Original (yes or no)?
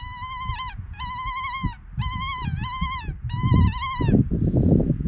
yes